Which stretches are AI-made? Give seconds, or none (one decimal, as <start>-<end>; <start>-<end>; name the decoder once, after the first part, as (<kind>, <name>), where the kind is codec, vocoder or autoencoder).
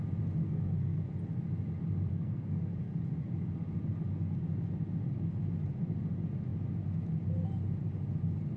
0.4-1.0 (codec, SNAC); 2.1-3.0